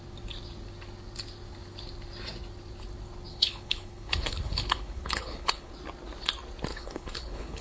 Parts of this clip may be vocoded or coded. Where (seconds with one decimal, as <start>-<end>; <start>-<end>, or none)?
3.3-5.7; 6.7-7.6